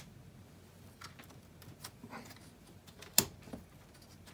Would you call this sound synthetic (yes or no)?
no